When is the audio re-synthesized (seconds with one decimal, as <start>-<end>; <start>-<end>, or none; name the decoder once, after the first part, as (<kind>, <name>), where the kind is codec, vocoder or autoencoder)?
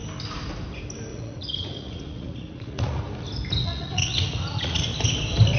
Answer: 1.1-3.0 (vocoder, Vocos); 3.6-4.8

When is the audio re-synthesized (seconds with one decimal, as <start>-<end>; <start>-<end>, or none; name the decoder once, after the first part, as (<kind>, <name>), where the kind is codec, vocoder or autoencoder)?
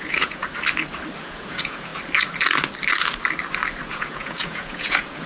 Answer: 0.0-0.5 (vocoder, Vocos); 1.2-1.9; 3.9-5.3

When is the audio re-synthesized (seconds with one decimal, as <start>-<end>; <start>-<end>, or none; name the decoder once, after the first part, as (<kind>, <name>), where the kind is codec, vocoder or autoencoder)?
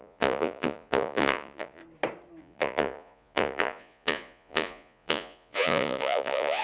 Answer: 0.0-1.8 (vocoder, Vocos); 2.4-6.6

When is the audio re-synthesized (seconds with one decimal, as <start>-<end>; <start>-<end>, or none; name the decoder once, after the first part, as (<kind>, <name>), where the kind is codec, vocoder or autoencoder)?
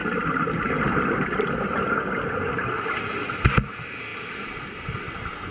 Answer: none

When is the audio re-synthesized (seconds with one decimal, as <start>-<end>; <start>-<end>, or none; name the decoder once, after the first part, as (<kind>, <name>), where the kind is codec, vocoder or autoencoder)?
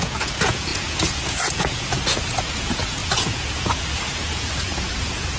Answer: 0.0-5.4 (vocoder, Vocos)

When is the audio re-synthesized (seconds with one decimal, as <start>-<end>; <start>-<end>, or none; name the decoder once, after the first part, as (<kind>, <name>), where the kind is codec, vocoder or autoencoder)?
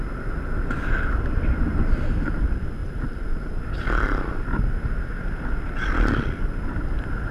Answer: none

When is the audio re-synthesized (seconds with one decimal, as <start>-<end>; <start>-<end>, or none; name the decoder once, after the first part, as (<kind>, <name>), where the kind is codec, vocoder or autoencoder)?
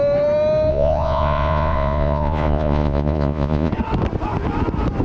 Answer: 0.7-3.7 (vocoder, Vocos)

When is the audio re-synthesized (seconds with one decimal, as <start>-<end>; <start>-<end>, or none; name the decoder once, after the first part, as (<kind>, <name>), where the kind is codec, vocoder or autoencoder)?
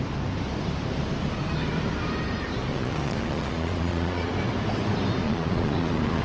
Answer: 2.7-4.3 (vocoder, Vocos); 5.2-6.2